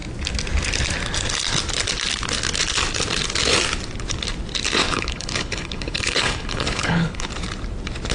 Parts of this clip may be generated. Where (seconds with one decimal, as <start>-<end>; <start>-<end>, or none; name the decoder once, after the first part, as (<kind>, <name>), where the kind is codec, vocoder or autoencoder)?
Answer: 4.8-7.3 (codec, HILCodec)